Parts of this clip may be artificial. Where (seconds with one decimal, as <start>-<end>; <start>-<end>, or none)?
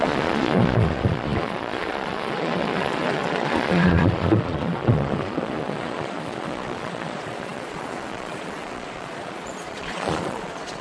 0.0-10.8